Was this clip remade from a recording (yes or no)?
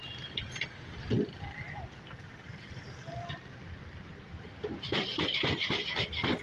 no